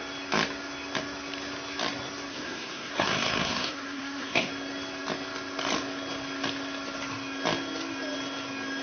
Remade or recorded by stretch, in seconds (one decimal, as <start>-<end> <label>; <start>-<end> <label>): 0.0-2.3 recorded; 2.3-4.5 remade; 4.5-8.8 recorded